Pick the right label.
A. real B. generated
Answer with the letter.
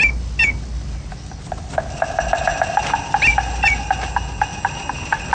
A